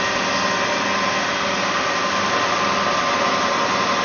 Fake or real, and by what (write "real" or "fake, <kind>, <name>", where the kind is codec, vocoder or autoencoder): real